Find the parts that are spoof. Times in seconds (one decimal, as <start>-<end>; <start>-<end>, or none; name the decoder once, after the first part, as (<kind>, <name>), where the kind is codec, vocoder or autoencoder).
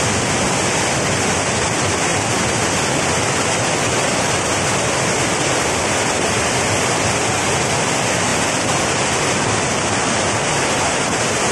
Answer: none